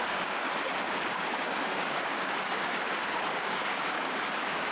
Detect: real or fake fake